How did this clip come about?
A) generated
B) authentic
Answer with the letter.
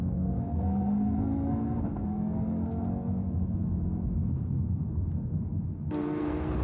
A